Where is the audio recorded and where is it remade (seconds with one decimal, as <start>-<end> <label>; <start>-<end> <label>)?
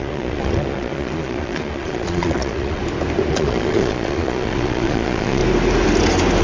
0.0-2.8 remade; 2.8-3.3 recorded; 3.3-5.4 remade; 5.4-6.4 recorded